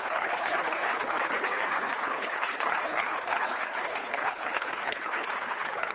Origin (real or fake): fake